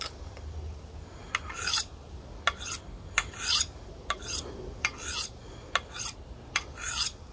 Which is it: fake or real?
real